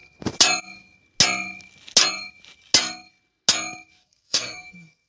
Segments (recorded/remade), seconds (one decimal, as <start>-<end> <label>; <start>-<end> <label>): 0.0-4.0 recorded; 4.0-5.1 remade